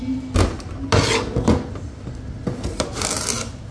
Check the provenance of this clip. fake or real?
real